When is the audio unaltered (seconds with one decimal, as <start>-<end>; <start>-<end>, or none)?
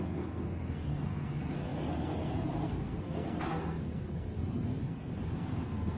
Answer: none